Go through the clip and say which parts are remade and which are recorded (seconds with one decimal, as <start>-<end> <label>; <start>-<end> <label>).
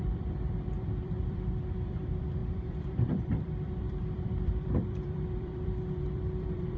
0.0-6.8 remade